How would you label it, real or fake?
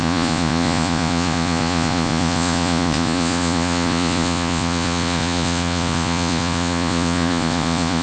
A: fake